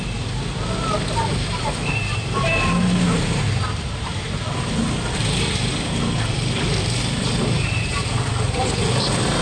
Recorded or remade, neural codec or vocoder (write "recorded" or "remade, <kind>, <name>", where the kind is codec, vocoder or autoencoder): recorded